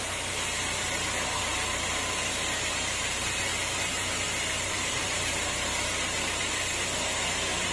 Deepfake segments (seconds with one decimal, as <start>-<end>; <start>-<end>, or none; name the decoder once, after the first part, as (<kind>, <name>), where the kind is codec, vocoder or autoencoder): none